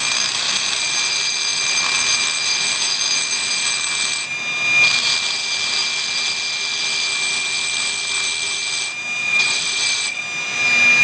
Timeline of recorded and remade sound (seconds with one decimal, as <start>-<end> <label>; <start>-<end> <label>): 0.0-9.2 recorded; 9.2-10.2 remade; 10.2-11.0 recorded